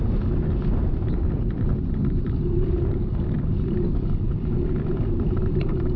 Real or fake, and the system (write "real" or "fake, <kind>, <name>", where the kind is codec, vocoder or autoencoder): fake, vocoder, BigVGAN v2